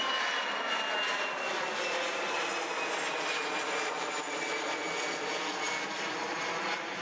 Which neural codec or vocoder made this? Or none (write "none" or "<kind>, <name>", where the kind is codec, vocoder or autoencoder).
none